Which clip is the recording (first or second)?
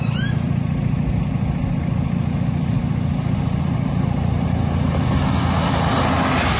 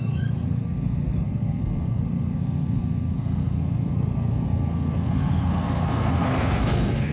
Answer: first